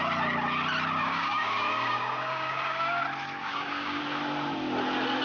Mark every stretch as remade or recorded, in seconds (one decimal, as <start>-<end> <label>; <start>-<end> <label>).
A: 0.0-1.0 recorded; 1.0-3.0 remade; 3.0-3.4 recorded; 3.4-4.0 remade; 4.0-5.2 recorded